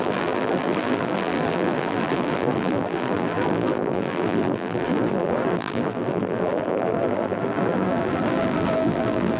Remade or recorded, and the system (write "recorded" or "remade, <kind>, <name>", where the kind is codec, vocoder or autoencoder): remade, vocoder, BigVGAN v2